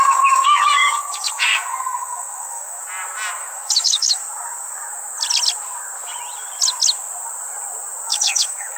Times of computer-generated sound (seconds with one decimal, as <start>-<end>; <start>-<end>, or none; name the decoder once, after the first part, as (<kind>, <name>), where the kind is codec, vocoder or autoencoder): 0.0-2.8 (codec, DAC); 3.4-4.2; 8.1-8.8